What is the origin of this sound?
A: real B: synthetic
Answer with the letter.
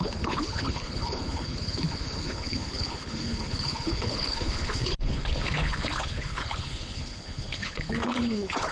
B